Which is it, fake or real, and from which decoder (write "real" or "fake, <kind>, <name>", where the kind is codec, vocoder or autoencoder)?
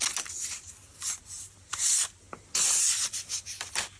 real